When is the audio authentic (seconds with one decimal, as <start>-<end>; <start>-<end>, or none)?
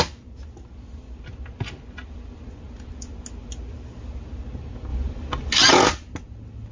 0.0-6.7